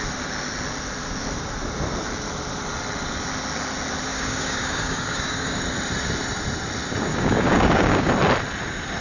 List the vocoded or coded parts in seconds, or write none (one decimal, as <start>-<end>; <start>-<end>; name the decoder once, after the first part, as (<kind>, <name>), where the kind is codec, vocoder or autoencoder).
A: 4.1-5.6 (codec, DAC); 7.1-8.1